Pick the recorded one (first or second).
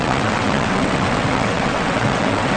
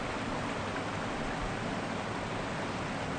second